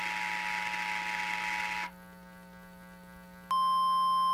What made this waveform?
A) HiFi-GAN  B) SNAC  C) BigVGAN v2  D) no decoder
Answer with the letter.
D